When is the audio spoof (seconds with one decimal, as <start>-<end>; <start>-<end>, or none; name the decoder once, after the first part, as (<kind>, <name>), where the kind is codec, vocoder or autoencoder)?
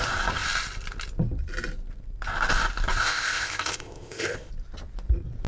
3.0-4.5 (codec, ZipCodec)